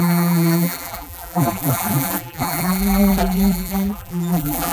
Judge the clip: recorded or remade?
remade